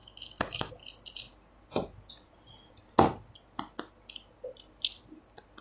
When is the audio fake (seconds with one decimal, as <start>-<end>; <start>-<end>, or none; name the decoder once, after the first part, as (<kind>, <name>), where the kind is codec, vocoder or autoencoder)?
0.0-0.7 (autoencoder, DAC-VAE)